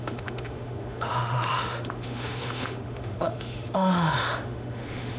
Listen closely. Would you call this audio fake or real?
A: fake